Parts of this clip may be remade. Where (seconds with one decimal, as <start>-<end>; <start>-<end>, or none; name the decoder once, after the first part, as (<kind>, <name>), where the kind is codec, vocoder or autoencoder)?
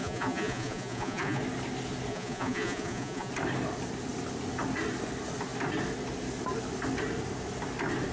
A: 0.0-1.4 (vocoder, Vocos); 2.1-3.3